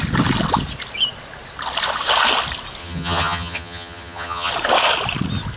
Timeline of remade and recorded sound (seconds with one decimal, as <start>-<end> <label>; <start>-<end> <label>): 0.0-2.8 recorded; 2.8-4.5 remade; 4.5-5.6 recorded